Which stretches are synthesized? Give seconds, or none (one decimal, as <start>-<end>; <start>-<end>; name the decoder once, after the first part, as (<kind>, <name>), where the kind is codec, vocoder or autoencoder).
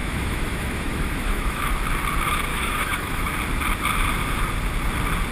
0.0-1.7 (autoencoder, DAC-VAE); 2.5-3.3